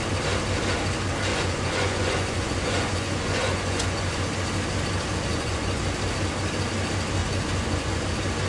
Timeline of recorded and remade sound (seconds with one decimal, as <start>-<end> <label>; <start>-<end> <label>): 0.0-1.3 recorded; 1.3-4.2 remade; 4.2-5.3 recorded; 5.3-5.8 remade; 5.8-7.2 recorded; 7.2-8.1 remade; 8.1-8.5 recorded